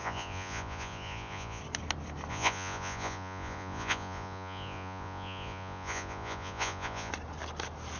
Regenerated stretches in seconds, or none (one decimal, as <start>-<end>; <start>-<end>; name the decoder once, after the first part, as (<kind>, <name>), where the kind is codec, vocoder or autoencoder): 0.0-1.6 (vocoder, Vocos); 2.3-7.1

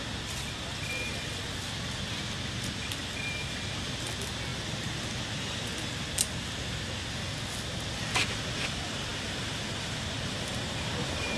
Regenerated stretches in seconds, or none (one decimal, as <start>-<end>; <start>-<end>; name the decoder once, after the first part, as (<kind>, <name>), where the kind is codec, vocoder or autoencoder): none

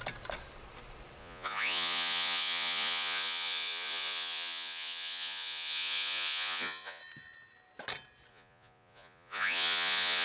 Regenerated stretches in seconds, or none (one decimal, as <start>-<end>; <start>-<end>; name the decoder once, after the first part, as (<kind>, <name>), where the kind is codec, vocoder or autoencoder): 1.2-7.0 (vocoder, Vocos); 8.3-10.2

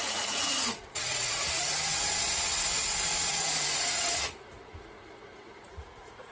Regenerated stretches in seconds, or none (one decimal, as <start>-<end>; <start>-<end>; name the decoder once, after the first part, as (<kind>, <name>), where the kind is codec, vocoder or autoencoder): 0.0-1.6 (vocoder, Vocos); 3.3-6.3

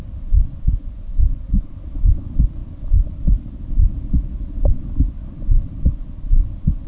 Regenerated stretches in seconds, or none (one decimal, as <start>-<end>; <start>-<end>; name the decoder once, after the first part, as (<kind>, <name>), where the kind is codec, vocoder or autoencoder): 0.8-1.7 (vocoder, Vocos)